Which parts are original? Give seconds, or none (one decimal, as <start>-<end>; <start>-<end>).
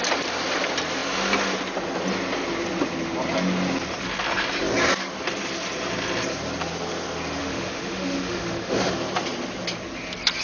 0.0-7.4; 8.9-10.4